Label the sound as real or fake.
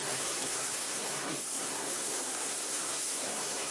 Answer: fake